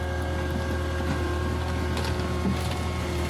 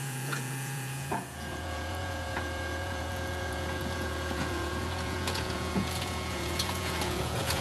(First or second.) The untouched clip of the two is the first